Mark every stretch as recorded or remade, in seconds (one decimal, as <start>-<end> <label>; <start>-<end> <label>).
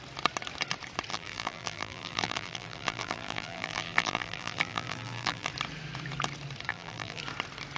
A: 0.0-1.1 recorded; 1.1-5.5 remade; 5.5-6.7 recorded; 6.7-7.2 remade; 7.2-7.8 recorded